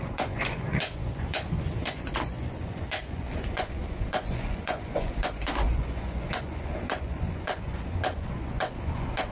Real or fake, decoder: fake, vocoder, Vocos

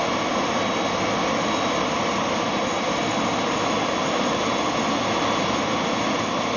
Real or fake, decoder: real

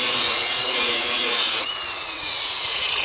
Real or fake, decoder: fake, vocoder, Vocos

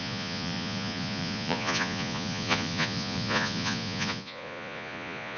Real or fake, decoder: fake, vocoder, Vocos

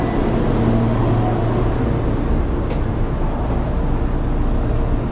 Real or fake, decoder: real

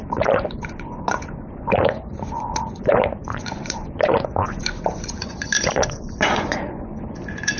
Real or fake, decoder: fake, vocoder, Vocos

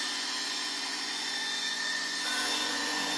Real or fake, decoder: fake, vocoder, Vocos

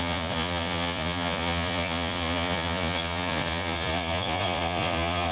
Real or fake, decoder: fake, vocoder, Vocos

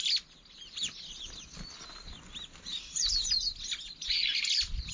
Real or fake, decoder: real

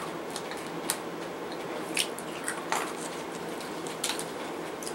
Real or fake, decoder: real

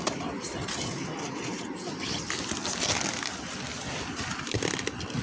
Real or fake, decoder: real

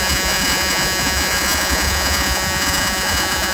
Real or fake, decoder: fake, vocoder, Vocos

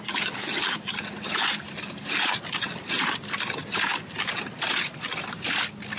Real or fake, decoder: real